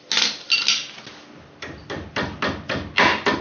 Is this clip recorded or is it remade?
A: recorded